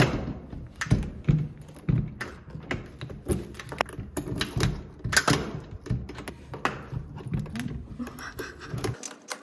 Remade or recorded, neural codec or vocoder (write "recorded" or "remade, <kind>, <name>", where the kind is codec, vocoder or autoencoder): recorded